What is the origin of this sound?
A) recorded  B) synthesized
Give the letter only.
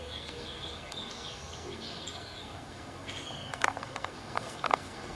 B